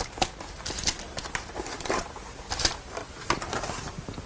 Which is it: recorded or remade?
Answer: recorded